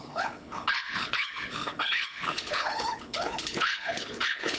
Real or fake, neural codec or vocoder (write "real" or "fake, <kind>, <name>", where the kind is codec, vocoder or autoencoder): fake, codec, HILCodec